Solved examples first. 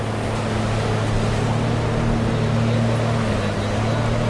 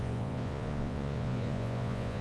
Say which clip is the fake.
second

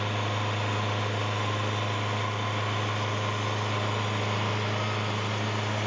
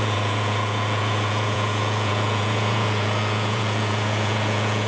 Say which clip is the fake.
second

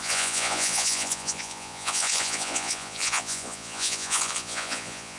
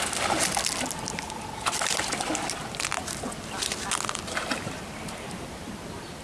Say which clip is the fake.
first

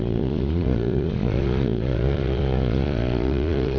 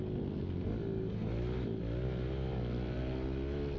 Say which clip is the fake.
first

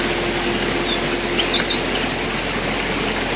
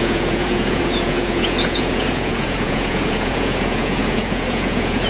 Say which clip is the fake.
second